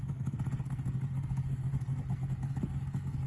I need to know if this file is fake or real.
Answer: fake